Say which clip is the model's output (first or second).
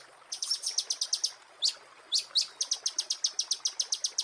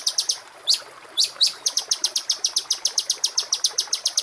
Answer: second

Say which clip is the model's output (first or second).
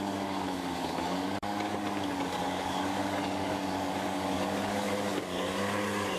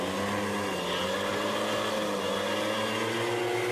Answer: first